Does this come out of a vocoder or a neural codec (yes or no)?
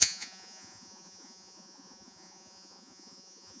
yes